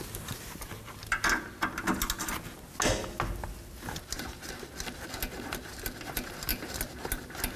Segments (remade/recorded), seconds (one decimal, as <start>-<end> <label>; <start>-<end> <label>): 0.0-7.6 recorded